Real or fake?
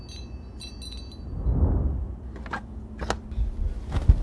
real